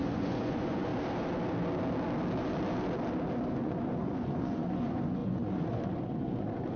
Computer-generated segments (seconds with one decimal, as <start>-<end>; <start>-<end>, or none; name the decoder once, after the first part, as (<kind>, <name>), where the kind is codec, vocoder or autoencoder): 0.0-0.9 (vocoder, Vocos); 3.5-6.8